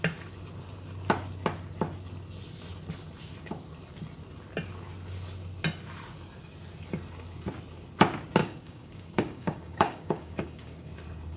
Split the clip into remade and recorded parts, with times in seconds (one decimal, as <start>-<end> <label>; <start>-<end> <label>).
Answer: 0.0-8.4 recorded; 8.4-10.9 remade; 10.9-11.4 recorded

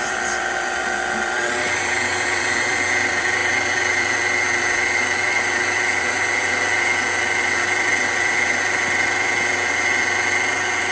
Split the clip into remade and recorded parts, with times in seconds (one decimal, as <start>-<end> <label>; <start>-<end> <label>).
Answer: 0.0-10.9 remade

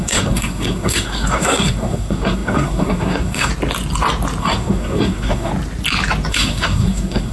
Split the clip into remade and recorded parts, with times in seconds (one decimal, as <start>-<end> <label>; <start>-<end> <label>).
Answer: 0.0-3.5 remade; 3.5-4.4 recorded; 4.4-5.5 remade; 5.5-6.3 recorded; 6.3-7.3 remade

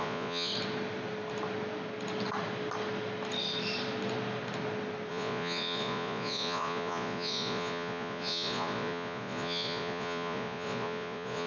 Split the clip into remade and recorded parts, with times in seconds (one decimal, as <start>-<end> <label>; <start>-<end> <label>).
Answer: 0.0-0.5 remade; 0.5-5.1 recorded; 5.1-11.5 remade

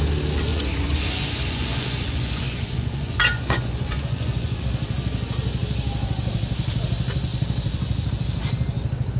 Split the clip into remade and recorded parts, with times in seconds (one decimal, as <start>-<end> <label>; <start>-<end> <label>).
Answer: 0.0-0.5 recorded; 0.5-4.6 remade; 4.6-9.2 recorded

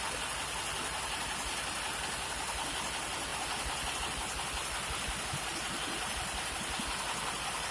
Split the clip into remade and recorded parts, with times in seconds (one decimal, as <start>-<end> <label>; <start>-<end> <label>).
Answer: 0.0-3.3 recorded; 3.3-4.0 remade; 4.0-5.5 recorded; 5.5-6.8 remade; 6.8-7.7 recorded